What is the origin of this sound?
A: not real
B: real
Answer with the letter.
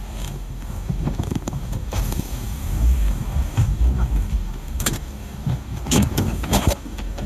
A